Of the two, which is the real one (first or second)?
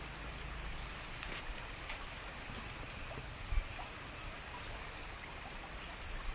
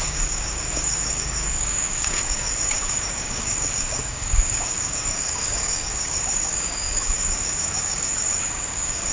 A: first